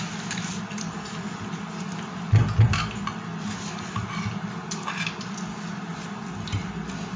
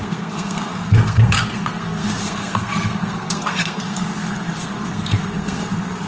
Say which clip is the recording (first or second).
first